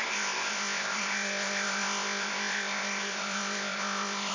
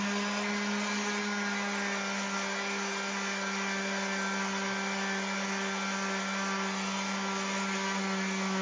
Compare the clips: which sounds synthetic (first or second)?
first